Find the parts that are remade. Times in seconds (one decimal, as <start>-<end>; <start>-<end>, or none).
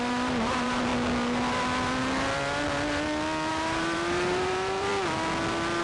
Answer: 0.0-0.9; 3.5-4.9